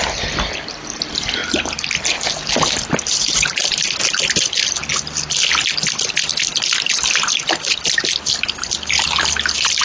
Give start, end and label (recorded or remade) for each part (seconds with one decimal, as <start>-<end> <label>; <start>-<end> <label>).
0.0-9.8 recorded